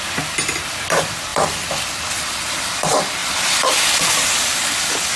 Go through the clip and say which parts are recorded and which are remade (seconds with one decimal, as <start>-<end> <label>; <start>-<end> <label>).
0.0-1.3 recorded; 1.3-2.0 remade; 2.0-3.2 recorded; 3.2-4.3 remade; 4.3-5.2 recorded